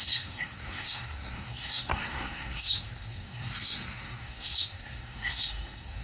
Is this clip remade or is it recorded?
remade